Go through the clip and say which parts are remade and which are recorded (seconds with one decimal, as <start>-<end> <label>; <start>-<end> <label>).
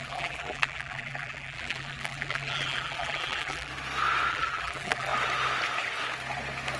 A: 0.0-3.7 remade; 3.7-4.3 recorded; 4.3-5.1 remade; 5.1-6.8 recorded